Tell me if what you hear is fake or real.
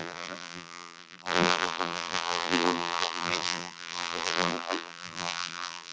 fake